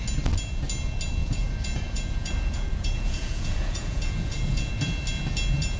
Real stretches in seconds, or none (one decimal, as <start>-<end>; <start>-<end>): 0.0-1.2; 4.7-5.8